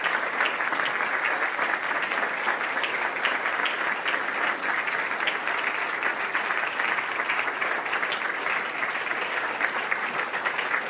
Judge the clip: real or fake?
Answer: real